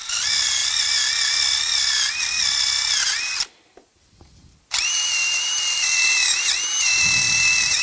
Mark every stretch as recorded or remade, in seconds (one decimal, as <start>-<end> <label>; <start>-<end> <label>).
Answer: 0.0-3.7 recorded; 3.7-6.4 remade; 6.4-7.8 recorded